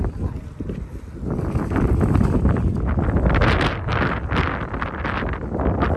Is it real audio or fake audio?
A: real